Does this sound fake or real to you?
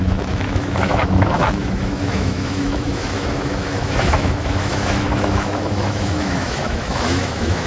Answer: fake